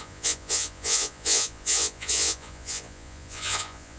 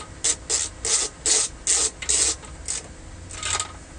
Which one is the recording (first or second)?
second